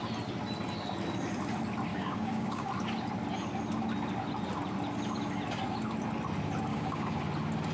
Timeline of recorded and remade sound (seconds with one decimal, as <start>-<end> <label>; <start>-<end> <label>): 0.0-1.9 recorded; 1.9-2.7 remade; 2.7-6.7 recorded; 6.7-7.2 remade; 7.2-7.7 recorded